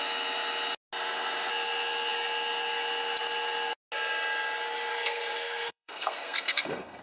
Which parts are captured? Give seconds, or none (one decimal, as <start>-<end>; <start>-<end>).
0.0-4.9